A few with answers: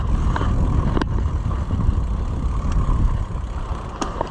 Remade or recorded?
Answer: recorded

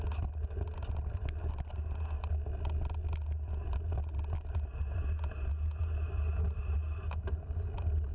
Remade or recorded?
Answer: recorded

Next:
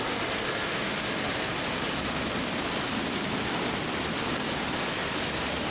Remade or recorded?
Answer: recorded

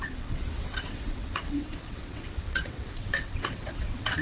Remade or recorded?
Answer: remade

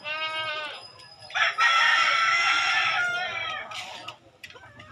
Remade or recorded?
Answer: recorded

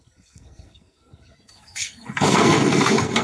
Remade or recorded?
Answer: remade